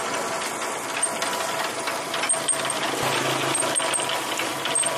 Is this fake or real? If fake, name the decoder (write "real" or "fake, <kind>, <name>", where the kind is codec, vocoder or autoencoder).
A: real